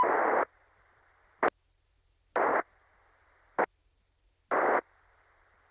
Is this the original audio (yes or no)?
yes